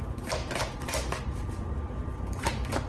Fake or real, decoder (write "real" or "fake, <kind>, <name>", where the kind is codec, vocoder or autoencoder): real